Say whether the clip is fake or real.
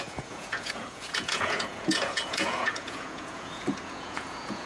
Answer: fake